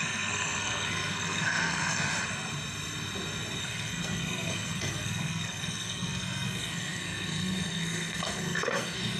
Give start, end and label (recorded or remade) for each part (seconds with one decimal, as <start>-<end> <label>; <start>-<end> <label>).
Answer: 0.0-2.1 remade; 2.1-3.6 recorded; 3.6-9.2 remade